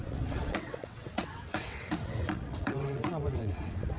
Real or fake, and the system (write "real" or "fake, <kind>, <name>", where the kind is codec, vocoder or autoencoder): fake, vocoder, WaveNeXt